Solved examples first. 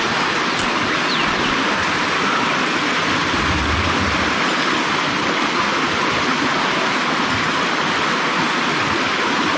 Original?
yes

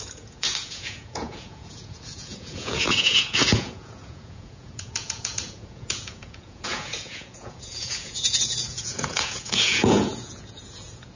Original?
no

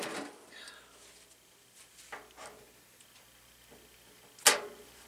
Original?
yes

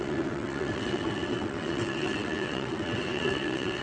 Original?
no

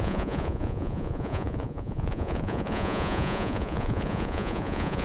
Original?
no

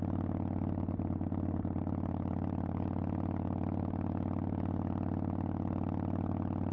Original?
yes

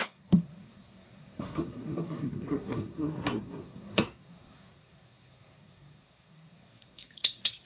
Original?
no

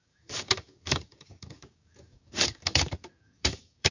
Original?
no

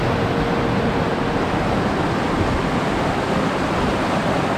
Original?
yes